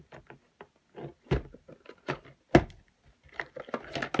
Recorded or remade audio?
recorded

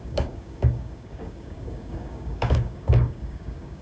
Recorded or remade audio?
remade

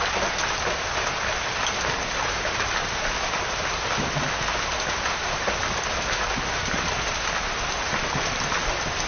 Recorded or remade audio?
recorded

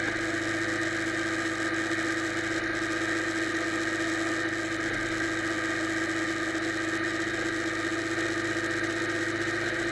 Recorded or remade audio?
recorded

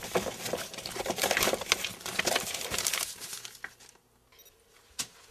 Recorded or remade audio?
recorded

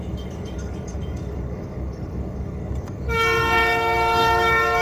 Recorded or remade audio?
remade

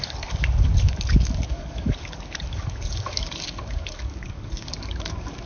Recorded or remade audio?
remade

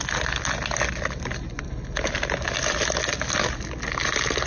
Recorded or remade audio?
recorded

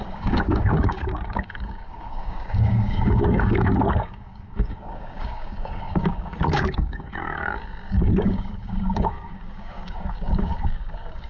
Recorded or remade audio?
remade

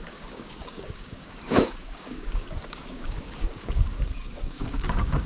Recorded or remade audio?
remade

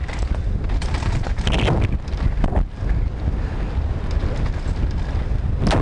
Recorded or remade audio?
recorded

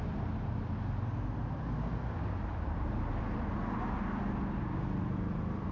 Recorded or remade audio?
recorded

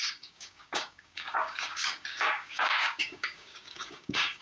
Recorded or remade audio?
remade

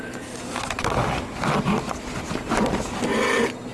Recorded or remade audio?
recorded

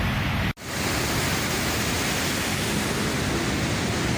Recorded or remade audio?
recorded